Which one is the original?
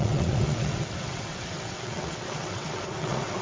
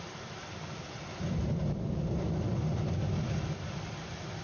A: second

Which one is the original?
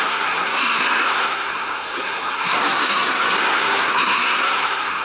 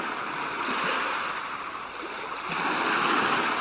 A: second